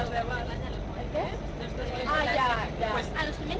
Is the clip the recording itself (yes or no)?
no